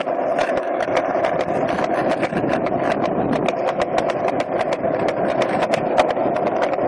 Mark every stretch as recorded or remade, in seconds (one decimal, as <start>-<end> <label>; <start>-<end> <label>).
0.0-0.4 recorded; 0.4-0.9 remade; 0.9-6.9 recorded